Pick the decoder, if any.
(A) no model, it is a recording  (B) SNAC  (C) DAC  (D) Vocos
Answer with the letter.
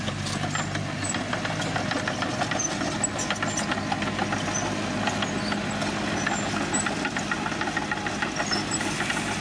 A